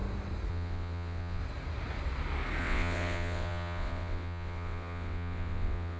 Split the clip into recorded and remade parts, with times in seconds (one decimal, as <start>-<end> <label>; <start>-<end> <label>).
0.0-0.5 recorded; 0.5-1.4 remade; 1.4-2.6 recorded; 2.6-6.0 remade